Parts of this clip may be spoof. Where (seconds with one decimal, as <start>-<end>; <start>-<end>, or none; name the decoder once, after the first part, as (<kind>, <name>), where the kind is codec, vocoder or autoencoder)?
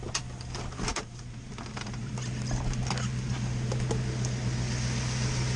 0.9-2.1 (vocoder, BigVGAN v2)